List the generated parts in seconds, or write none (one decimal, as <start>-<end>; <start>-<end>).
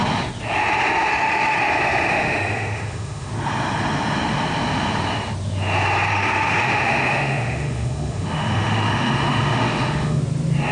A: 1.1-1.7; 2.1-3.3; 6.1-10.2